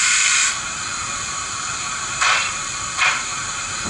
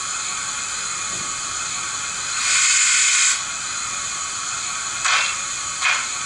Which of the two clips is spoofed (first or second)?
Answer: first